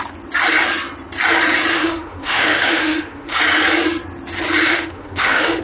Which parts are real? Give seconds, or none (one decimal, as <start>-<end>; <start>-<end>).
0.0-1.7; 3.4-4.7